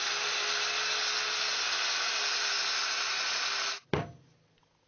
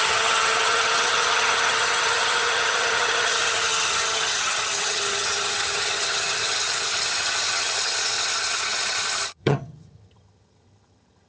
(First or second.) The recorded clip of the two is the first